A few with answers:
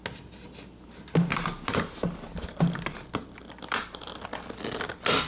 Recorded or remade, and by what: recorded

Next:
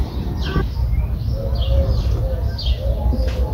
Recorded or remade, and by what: recorded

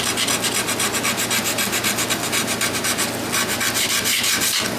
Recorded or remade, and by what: recorded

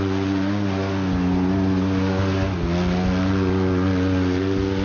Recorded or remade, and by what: recorded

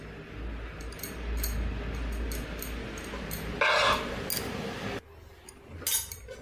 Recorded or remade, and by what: recorded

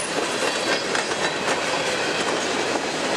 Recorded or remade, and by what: recorded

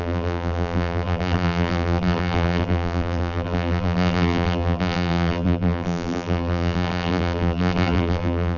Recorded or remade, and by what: remade, vocoder, BigVGAN v2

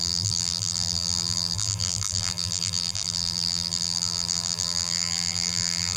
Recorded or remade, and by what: remade, vocoder, BigVGAN v2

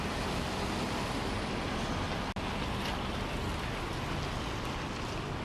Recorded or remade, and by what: recorded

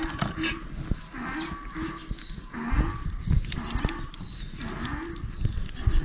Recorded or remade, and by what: recorded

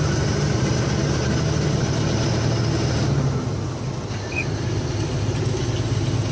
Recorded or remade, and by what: recorded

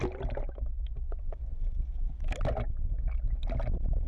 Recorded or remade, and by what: recorded